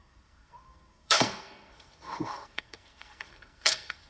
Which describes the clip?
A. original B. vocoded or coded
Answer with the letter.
B